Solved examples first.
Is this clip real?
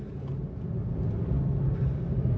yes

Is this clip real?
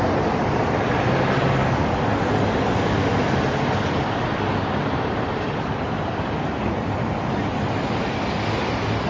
yes